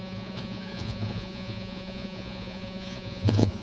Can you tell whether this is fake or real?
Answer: fake